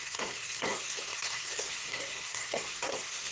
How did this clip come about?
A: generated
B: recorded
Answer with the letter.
A